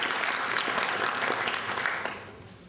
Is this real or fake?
real